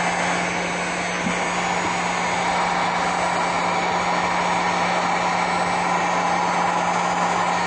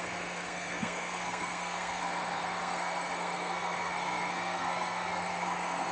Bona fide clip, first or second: first